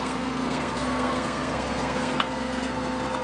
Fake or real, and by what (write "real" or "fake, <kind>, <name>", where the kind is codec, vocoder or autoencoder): fake, codec, SNAC